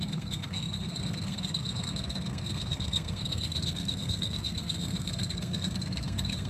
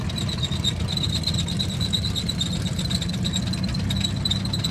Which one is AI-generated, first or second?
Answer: first